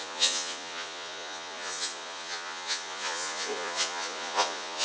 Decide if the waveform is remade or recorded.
remade